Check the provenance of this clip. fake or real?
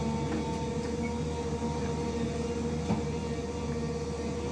real